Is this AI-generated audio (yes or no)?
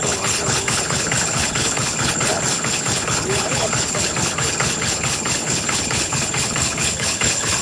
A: yes